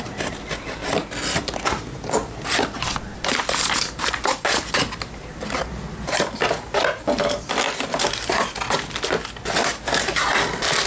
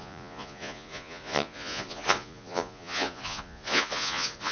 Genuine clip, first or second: first